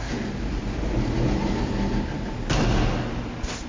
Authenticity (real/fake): real